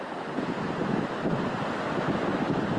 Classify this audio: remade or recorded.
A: recorded